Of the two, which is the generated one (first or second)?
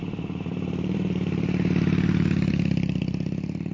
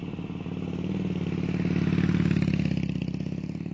first